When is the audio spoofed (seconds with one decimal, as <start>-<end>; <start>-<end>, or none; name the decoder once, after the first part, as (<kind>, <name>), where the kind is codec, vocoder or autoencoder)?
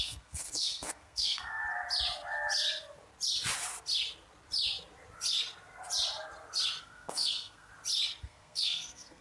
0.0-1.6 (codec, SNAC); 6.8-7.7; 8.2-9.2